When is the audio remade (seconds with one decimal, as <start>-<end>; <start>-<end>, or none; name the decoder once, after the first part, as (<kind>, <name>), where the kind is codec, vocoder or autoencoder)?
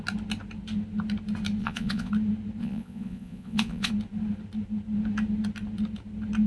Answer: 1.6-2.1 (vocoder, Vocos); 2.6-3.9